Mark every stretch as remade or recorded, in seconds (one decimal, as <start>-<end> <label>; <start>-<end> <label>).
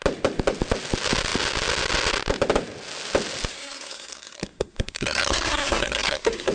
0.0-3.5 recorded; 3.5-6.5 remade